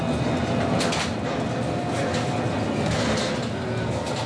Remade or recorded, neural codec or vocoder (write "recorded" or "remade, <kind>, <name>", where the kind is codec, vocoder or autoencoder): recorded